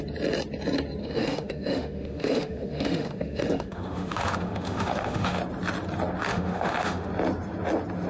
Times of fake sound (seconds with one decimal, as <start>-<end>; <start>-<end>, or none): 1.0-5.4; 6.3-7.1